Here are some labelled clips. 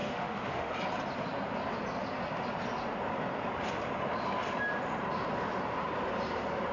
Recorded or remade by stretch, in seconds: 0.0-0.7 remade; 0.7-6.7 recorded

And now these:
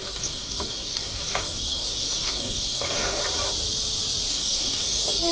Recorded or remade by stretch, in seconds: 0.0-3.2 remade; 3.2-4.3 recorded; 4.3-5.3 remade

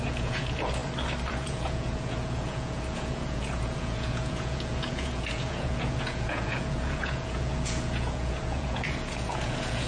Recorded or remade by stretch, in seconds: 0.0-0.8 remade; 0.8-1.3 recorded; 1.3-9.9 remade

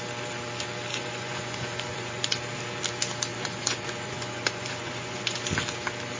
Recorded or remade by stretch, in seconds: 0.0-0.9 recorded; 0.9-2.2 remade; 2.2-3.3 recorded; 3.3-5.4 remade; 5.4-6.2 recorded

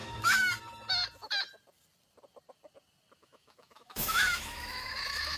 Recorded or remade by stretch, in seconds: 0.0-0.5 remade; 0.5-3.2 recorded; 3.2-5.4 remade

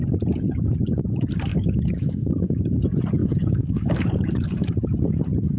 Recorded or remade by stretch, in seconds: 0.0-1.5 recorded; 1.5-2.8 remade; 2.8-3.2 recorded; 3.2-4.7 remade; 4.7-5.6 recorded

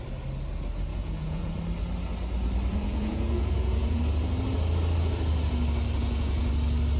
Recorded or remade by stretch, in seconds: 0.0-0.9 recorded; 0.9-1.6 remade; 1.6-2.7 recorded; 2.7-4.0 remade; 4.0-6.0 recorded; 6.0-6.5 remade; 6.5-7.0 recorded

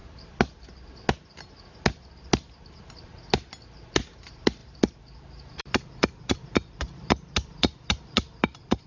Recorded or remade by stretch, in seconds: 0.0-4.6 recorded; 4.6-8.9 remade